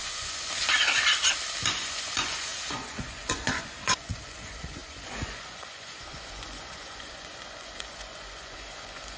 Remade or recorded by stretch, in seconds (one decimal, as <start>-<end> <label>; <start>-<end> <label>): 0.0-0.6 remade; 0.6-1.7 recorded; 1.7-9.2 remade